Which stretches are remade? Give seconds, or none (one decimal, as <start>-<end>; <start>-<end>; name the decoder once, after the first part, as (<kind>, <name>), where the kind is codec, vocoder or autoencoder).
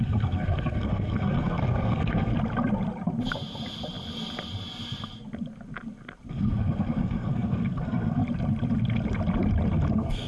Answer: 0.0-2.3 (codec, SNAC); 6.3-8.2; 9.9-10.3